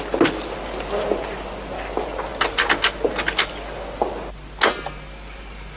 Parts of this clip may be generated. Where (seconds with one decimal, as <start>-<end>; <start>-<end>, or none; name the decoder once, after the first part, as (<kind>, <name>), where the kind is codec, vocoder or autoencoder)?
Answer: none

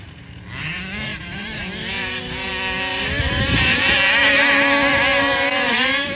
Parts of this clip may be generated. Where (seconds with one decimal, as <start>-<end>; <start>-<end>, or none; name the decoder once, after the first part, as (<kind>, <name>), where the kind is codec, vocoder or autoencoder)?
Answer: 1.1-2.5 (vocoder, BigVGAN v2); 2.9-3.8